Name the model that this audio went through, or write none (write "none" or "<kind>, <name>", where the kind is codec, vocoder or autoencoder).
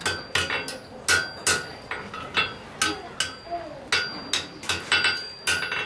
none